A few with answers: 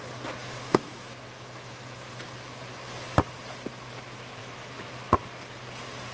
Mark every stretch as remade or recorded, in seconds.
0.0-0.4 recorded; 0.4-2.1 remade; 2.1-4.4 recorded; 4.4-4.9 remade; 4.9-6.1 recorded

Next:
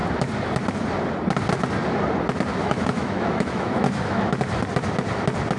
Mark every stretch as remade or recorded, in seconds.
0.0-2.6 recorded; 2.6-4.3 remade; 4.3-5.6 recorded